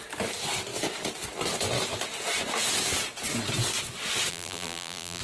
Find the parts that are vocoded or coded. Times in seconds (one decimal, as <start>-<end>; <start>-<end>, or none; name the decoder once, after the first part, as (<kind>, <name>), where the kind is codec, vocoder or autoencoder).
4.3-5.2 (vocoder, BigVGAN v2)